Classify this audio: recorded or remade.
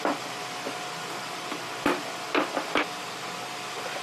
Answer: recorded